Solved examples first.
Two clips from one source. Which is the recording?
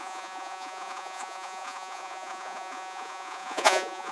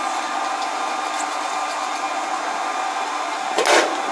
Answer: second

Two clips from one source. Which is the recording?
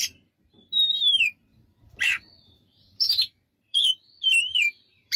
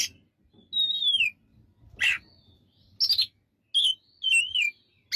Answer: second